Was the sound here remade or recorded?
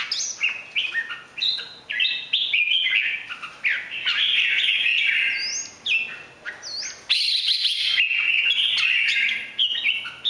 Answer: recorded